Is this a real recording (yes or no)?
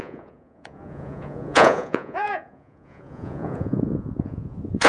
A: no